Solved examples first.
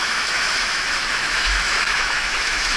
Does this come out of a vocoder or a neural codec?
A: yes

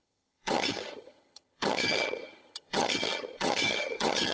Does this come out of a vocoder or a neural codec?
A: yes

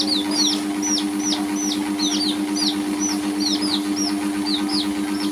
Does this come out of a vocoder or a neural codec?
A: no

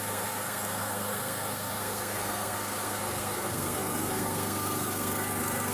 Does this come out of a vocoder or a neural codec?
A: yes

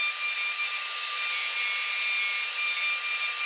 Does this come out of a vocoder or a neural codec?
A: no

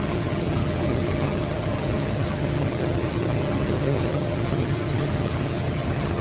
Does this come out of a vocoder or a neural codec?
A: yes